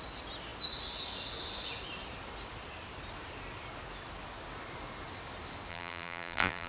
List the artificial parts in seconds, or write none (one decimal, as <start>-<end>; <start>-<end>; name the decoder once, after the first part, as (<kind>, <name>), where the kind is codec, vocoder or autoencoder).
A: 5.7-6.7 (vocoder, BigVGAN v2)